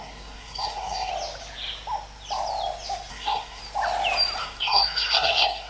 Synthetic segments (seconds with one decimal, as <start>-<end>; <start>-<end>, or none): 0.0-1.1; 3.1-3.6; 4.4-5.7